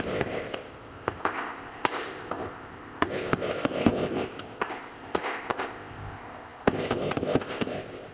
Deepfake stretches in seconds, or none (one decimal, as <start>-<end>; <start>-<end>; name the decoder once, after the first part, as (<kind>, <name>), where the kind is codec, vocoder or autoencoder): 0.0-8.1 (codec, ZipCodec)